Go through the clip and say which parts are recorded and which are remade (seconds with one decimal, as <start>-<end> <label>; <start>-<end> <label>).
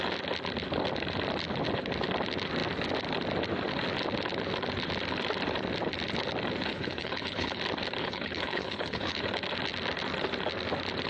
0.0-6.7 recorded; 6.7-7.6 remade; 7.6-8.0 recorded; 8.0-9.2 remade; 9.2-11.1 recorded